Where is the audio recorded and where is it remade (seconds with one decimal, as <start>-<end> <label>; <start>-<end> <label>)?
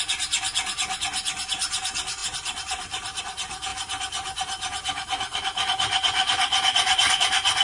0.0-2.2 recorded; 2.2-3.2 remade; 3.2-3.7 recorded; 3.7-7.1 remade; 7.1-7.6 recorded